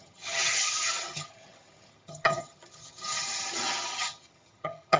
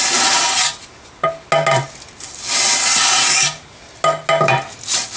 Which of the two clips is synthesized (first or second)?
first